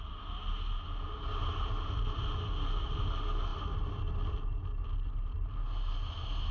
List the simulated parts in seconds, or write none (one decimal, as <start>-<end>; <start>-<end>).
none